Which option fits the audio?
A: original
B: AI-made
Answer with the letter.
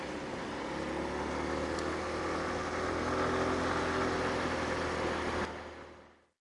A